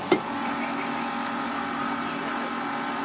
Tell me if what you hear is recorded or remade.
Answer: recorded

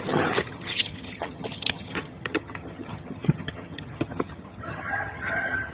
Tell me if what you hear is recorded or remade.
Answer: remade